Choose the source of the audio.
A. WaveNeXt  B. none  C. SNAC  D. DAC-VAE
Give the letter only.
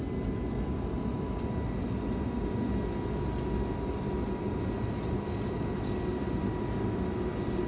B